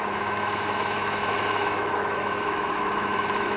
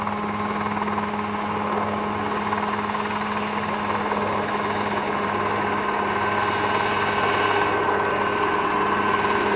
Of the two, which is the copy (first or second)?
first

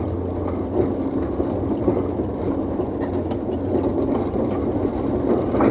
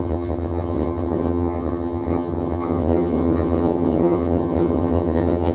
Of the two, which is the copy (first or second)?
second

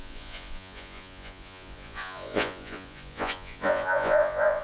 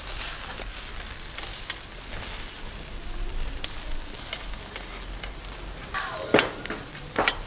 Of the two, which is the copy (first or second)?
first